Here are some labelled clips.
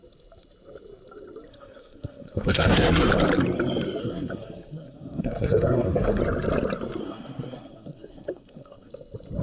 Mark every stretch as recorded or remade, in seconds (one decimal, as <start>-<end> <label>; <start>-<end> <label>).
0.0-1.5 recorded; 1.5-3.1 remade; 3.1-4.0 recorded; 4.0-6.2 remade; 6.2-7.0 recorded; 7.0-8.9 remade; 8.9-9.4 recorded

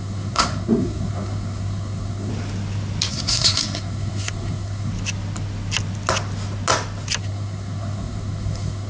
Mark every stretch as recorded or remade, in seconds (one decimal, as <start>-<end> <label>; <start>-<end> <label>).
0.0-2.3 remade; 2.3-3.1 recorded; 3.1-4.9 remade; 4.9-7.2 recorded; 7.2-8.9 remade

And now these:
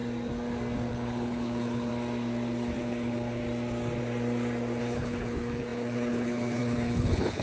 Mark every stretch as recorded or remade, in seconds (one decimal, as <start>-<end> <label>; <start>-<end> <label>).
0.0-0.9 recorded; 0.9-1.9 remade; 1.9-2.8 recorded; 2.8-3.4 remade; 3.4-4.8 recorded; 4.8-7.4 remade

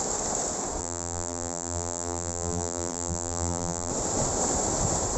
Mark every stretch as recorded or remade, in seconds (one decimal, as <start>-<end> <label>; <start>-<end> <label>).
0.0-0.8 recorded; 0.8-3.9 remade; 3.9-5.2 recorded

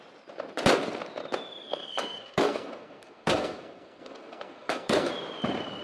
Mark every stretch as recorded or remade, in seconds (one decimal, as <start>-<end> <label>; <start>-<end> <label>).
0.0-1.6 recorded; 1.6-5.1 remade; 5.1-5.8 recorded

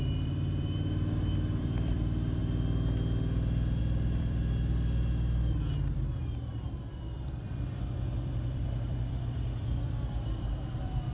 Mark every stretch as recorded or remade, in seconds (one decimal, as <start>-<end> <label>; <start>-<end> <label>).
0.0-2.4 remade; 2.4-3.8 recorded; 3.8-11.1 remade

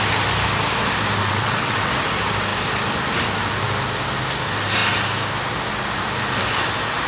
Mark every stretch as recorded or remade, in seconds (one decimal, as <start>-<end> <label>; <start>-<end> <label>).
0.0-1.2 recorded; 1.2-1.9 remade; 1.9-7.1 recorded

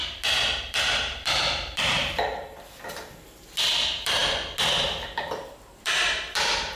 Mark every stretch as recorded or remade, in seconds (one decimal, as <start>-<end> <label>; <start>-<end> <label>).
0.0-0.6 recorded; 0.6-4.2 remade; 4.2-4.9 recorded; 4.9-6.7 remade